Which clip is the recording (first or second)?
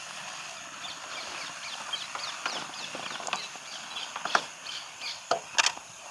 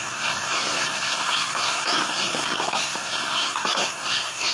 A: first